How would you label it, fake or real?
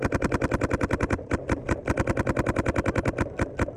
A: real